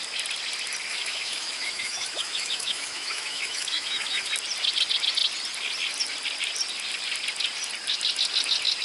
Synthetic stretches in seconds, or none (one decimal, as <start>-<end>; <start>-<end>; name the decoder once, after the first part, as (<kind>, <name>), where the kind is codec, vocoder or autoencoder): 0.9-4.3 (autoencoder, DAC-VAE)